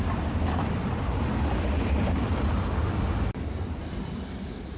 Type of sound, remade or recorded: remade